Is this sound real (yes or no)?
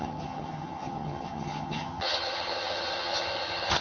no